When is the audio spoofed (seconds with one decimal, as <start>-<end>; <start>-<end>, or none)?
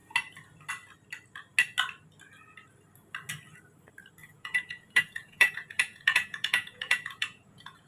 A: 4.2-7.9